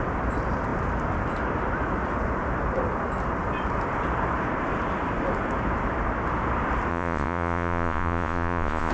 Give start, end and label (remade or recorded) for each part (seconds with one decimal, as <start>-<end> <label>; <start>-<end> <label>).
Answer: 0.0-6.9 recorded; 6.9-8.9 remade